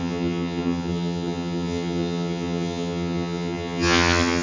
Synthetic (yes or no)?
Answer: yes